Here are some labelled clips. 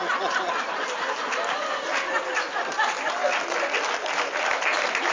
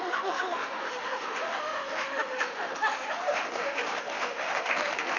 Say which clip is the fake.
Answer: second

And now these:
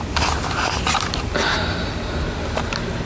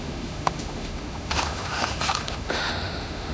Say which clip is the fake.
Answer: second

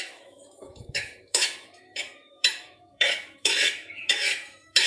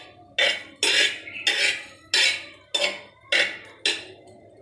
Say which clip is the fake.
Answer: first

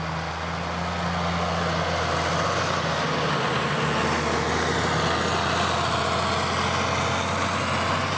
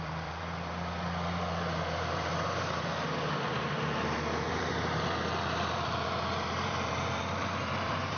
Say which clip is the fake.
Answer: second